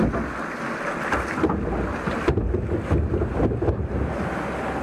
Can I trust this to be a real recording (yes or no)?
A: yes